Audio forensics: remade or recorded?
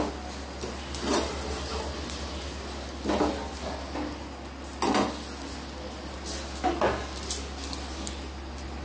recorded